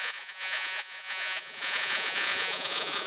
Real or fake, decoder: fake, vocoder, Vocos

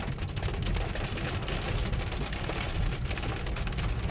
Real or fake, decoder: real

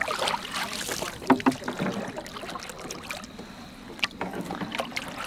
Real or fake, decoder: real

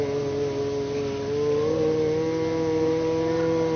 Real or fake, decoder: real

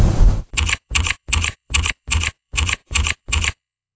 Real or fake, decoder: fake, vocoder, Vocos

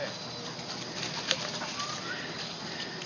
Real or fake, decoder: real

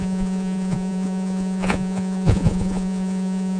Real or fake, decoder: fake, vocoder, Vocos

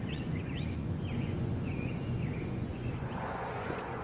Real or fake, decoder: fake, vocoder, Vocos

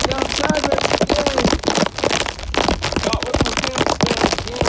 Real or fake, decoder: real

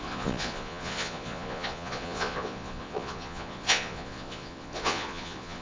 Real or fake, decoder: fake, vocoder, Vocos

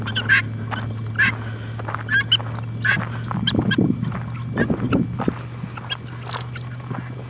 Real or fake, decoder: real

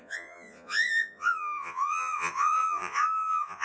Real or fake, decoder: fake, vocoder, Vocos